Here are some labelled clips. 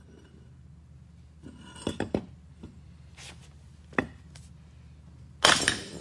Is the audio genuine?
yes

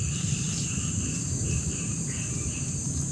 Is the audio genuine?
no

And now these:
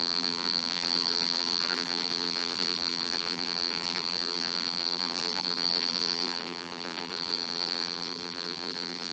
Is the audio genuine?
no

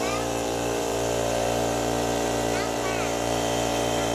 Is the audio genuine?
no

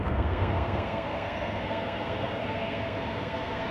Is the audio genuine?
no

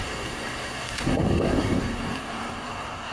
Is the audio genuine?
no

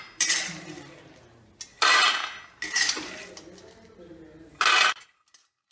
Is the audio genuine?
yes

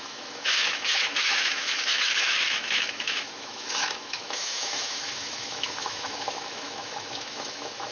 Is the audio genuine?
no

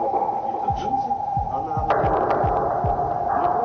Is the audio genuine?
yes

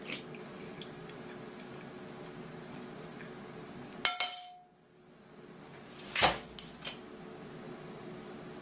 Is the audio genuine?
yes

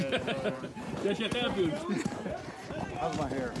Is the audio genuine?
yes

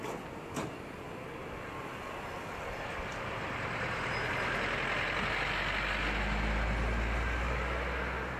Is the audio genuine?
yes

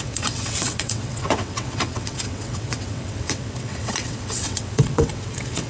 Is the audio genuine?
no